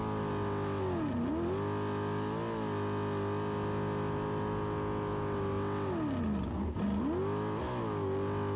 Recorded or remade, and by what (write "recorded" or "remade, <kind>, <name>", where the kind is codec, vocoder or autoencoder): recorded